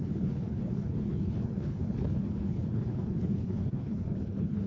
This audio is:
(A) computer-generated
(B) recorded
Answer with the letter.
A